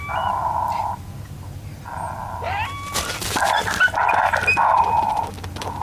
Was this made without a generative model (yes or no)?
yes